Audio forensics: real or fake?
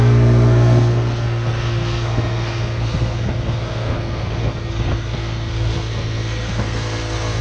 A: fake